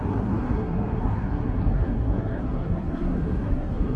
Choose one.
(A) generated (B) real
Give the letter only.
A